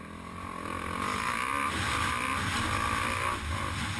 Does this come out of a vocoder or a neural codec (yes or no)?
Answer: no